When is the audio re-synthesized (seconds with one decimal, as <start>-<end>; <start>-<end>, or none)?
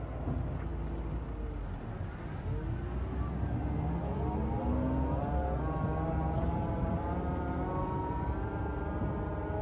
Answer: none